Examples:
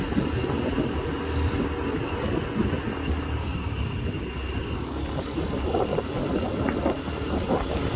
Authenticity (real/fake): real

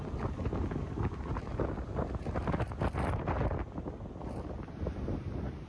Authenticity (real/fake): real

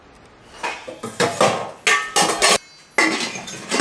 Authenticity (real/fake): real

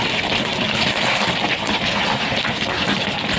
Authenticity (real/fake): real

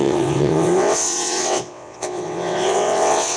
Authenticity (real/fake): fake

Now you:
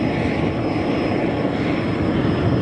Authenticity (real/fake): real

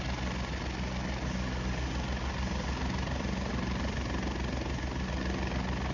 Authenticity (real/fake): real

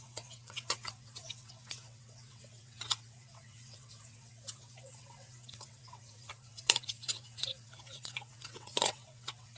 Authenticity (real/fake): fake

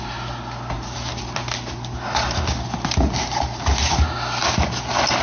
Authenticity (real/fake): real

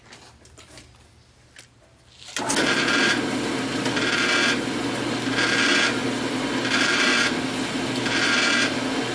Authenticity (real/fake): real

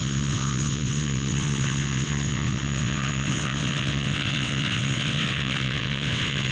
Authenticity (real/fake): fake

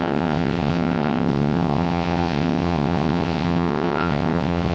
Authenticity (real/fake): fake